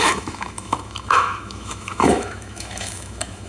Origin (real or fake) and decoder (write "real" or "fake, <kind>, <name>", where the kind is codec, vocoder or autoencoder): fake, autoencoder, DAC-VAE